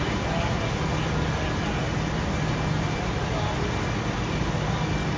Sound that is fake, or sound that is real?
real